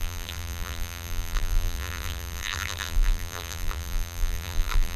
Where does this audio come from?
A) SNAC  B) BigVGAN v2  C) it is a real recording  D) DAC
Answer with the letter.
B